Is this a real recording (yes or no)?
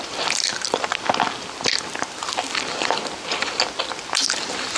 no